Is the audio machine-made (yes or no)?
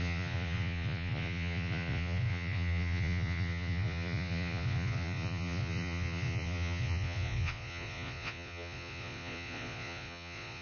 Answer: yes